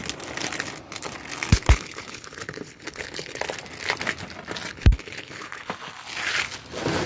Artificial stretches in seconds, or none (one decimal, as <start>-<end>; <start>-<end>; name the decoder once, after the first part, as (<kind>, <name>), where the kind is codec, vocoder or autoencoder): 1.5-3.4 (codec, HILCodec); 4.7-5.7